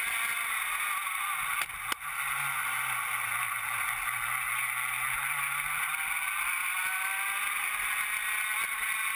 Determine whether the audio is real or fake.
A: real